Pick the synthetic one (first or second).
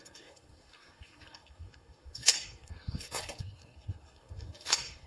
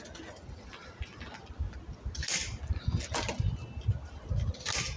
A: first